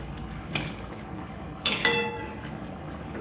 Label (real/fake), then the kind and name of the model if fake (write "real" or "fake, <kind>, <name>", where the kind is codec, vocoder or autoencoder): fake, codec, DAC